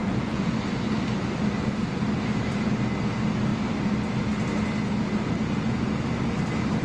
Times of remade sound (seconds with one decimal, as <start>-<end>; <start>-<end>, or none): 0.0-0.6